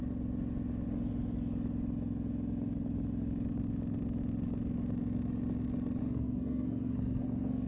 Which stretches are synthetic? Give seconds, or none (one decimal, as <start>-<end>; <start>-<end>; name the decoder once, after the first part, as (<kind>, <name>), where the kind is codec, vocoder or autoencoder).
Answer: 6.0-7.7 (codec, SNAC)